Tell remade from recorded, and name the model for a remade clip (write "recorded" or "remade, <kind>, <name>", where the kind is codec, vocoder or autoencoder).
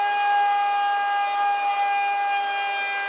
recorded